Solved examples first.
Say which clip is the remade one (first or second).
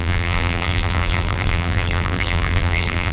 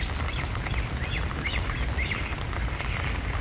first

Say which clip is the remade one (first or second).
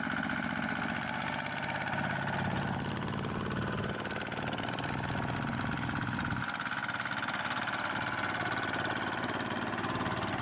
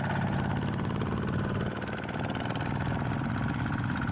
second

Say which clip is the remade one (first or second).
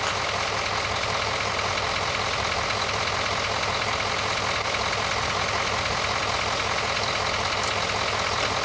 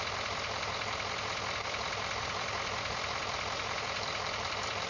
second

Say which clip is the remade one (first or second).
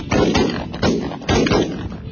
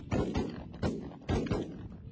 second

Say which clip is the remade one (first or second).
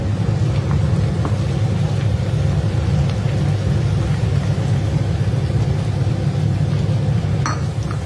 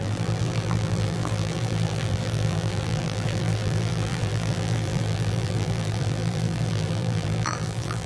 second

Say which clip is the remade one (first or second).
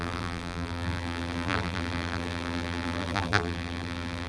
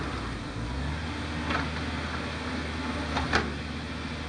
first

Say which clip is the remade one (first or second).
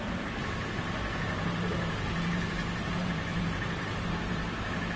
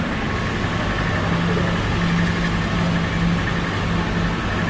first